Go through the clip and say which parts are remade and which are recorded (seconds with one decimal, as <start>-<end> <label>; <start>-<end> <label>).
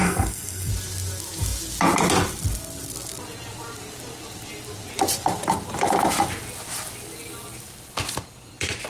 0.0-0.7 remade; 0.7-8.9 recorded